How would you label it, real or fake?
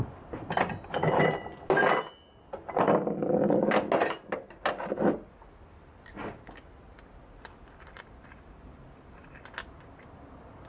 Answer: real